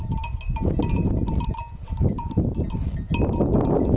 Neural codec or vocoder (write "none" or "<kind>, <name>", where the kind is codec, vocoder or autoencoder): none